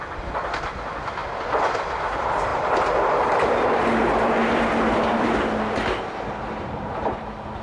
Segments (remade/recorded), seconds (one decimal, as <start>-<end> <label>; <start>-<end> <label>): 0.0-2.5 remade; 2.5-3.8 recorded; 3.8-7.6 remade